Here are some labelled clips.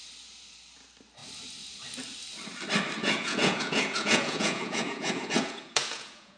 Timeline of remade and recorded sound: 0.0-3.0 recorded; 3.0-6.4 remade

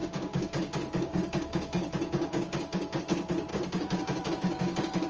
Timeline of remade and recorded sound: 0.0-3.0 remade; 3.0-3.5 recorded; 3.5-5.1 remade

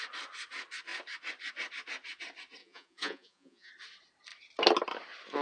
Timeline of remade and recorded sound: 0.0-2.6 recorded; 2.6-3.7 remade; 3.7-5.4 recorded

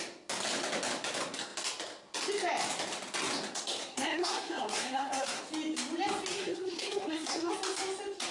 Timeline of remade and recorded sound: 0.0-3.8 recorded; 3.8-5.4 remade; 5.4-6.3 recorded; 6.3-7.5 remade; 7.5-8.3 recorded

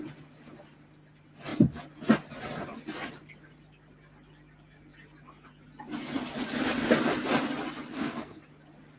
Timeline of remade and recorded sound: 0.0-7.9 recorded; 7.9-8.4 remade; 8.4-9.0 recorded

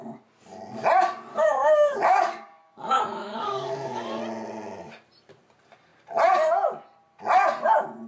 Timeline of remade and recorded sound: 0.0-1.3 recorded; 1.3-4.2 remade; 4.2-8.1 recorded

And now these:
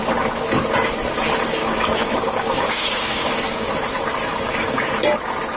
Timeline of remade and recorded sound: 0.0-1.6 recorded; 1.6-3.7 remade; 3.7-4.2 recorded; 4.2-4.9 remade; 4.9-5.6 recorded